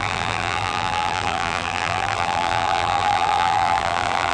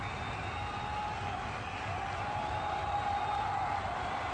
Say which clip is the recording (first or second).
second